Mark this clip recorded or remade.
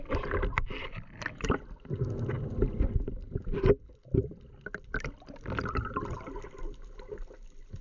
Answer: recorded